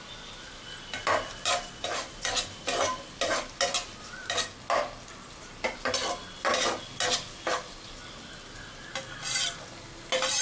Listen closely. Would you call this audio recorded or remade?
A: recorded